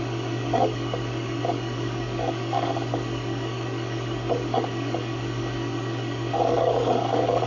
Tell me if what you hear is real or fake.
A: fake